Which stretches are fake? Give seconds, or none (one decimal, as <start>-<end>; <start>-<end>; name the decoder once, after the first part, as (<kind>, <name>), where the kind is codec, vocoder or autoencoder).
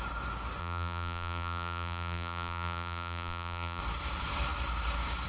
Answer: 0.6-3.8 (vocoder, BigVGAN v2)